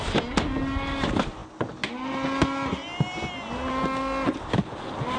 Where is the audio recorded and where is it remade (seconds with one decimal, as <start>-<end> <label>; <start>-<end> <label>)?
0.0-5.2 recorded